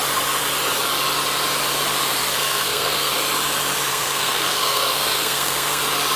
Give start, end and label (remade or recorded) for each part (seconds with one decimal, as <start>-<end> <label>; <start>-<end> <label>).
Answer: 0.0-2.4 recorded; 2.4-3.1 remade; 3.1-3.9 recorded; 3.9-5.8 remade; 5.8-6.2 recorded